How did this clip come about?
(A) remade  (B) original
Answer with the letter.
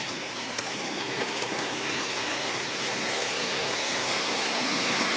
A